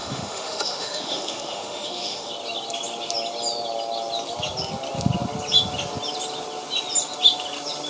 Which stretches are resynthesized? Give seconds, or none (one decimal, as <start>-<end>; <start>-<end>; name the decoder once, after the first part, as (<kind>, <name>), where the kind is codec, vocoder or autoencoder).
0.0-2.3 (autoencoder, DAC-VAE)